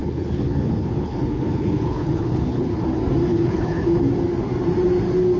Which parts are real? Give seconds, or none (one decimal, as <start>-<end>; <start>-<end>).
2.8-3.3; 4.0-5.4